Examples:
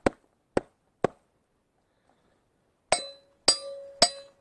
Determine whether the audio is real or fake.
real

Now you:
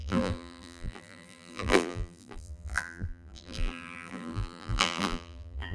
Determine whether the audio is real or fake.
fake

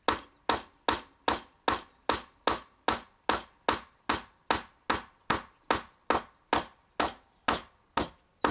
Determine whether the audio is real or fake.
real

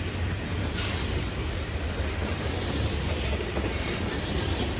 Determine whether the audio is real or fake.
real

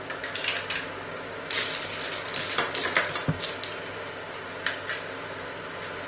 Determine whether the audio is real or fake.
real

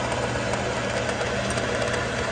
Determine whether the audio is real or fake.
real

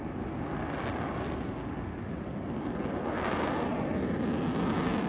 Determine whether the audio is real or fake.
real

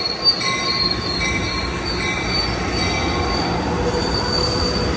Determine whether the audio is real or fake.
real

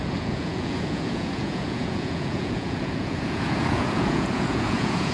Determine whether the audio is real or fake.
fake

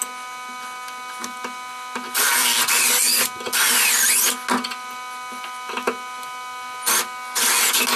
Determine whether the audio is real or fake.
real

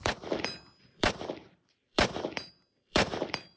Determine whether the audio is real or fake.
fake